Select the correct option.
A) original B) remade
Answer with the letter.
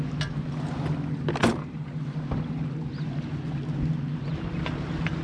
A